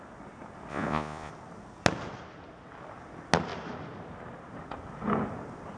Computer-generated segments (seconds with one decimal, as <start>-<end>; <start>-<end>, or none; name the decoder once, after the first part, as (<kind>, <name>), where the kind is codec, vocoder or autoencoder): 0.7-1.3 (vocoder, Vocos)